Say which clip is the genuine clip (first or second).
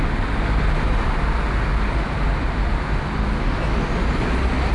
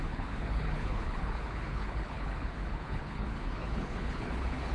first